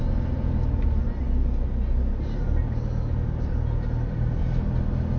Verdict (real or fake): real